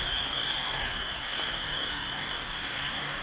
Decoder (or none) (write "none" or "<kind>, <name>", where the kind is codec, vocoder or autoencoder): codec, DAC